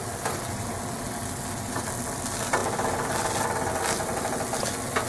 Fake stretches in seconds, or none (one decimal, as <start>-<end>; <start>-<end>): none